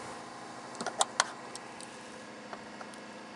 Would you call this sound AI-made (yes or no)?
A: no